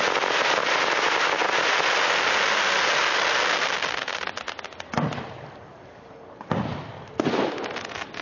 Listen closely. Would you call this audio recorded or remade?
recorded